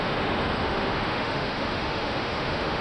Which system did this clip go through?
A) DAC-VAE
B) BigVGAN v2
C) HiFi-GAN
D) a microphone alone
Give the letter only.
A